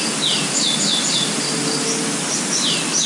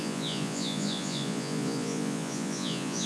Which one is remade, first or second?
second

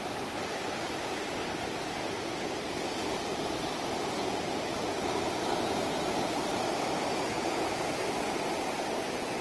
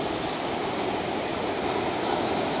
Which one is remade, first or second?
first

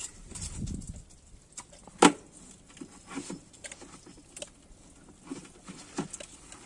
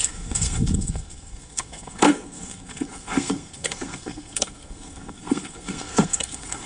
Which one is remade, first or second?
second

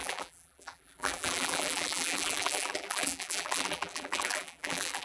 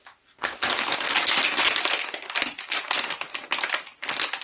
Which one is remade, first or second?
first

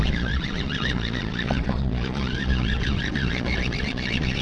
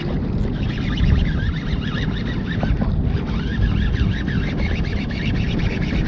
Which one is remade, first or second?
first